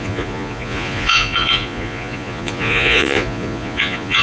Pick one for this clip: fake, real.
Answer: fake